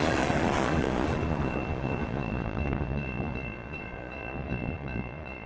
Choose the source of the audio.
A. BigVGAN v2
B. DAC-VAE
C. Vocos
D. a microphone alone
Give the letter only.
C